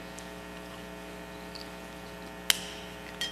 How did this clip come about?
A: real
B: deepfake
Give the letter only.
A